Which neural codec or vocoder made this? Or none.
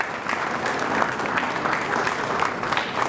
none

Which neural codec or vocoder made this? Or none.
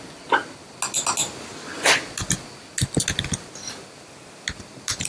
none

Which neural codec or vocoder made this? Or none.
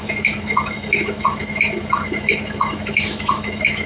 autoencoder, DAC-VAE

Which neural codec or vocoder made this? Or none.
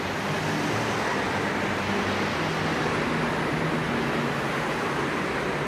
none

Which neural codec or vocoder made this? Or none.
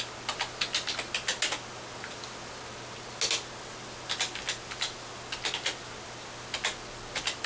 none